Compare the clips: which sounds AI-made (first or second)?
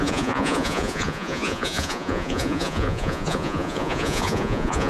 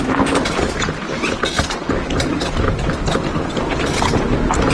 first